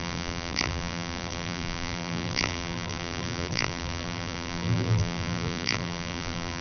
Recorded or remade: remade